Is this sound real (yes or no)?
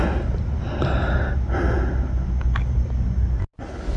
yes